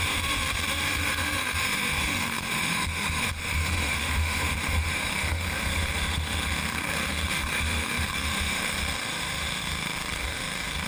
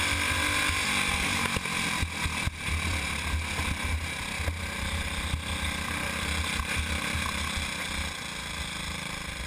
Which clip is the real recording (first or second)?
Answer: second